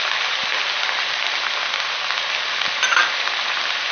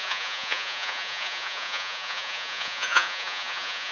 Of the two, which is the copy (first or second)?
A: second